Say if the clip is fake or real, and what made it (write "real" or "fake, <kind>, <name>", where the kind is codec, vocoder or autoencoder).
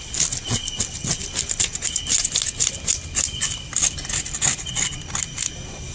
real